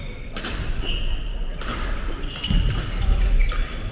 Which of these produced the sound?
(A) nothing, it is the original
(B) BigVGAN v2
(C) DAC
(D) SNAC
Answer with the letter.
A